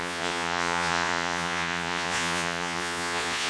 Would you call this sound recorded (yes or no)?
no